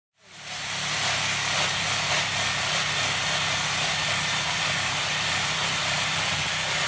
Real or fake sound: real